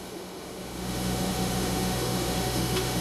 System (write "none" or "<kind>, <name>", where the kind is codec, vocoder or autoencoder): autoencoder, DAC-VAE